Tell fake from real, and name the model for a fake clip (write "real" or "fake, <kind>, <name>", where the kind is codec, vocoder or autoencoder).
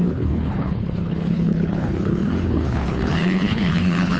fake, codec, HILCodec